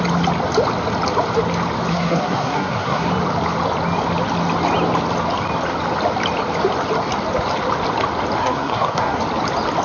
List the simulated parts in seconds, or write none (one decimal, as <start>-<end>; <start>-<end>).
1.9-3.1; 8.4-9.2